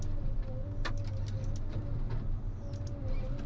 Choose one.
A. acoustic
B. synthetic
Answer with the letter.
A